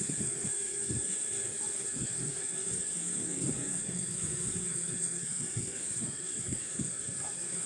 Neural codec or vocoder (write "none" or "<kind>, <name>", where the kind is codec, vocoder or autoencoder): codec, SNAC